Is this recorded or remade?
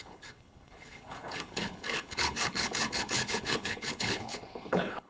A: remade